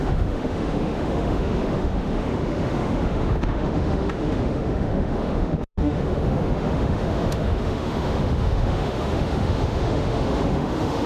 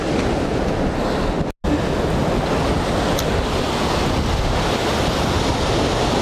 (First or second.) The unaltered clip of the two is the second